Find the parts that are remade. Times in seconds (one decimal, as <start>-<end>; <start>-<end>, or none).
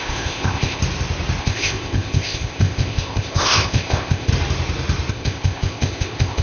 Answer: 0.0-0.8; 1.4-4.3; 5.1-6.4